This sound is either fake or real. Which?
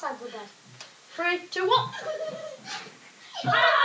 real